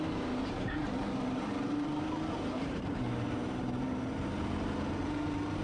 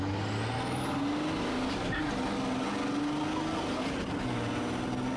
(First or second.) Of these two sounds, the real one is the second